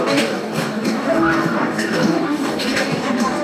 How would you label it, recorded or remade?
remade